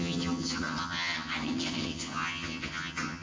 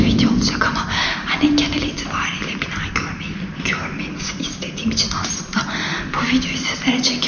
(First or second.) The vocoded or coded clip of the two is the first